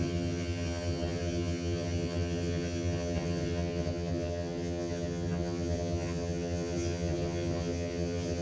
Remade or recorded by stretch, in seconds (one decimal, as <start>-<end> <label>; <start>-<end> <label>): 0.0-8.4 remade